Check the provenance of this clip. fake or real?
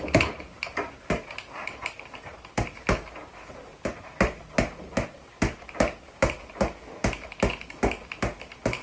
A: real